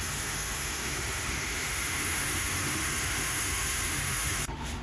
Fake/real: fake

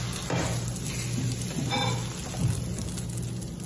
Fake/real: real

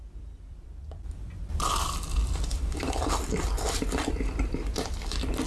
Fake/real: fake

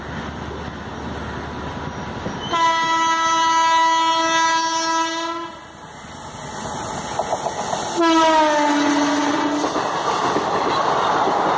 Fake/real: real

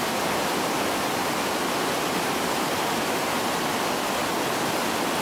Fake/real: fake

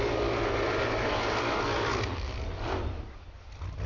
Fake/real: real